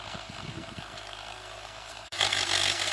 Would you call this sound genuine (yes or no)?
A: no